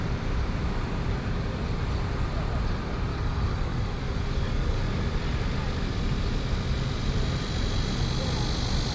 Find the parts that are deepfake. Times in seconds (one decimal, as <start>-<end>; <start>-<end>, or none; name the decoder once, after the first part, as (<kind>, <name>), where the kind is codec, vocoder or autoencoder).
3.1-4.8 (codec, DAC)